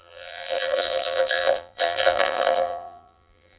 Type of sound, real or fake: fake